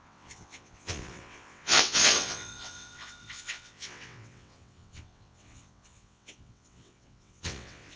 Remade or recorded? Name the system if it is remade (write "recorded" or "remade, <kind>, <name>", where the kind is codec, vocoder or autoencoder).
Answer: remade, vocoder, WaveNeXt